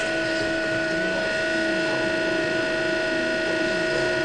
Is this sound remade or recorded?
recorded